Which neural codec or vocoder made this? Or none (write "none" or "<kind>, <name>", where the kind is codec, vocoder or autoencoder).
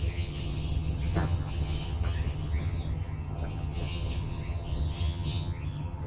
vocoder, HiFi-GAN